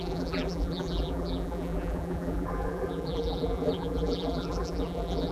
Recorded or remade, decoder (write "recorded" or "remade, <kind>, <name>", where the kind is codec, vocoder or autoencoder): remade, vocoder, BigVGAN v2